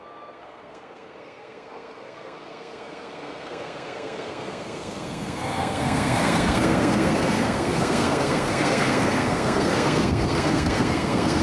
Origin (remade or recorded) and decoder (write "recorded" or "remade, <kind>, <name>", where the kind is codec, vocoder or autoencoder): remade, codec, SNAC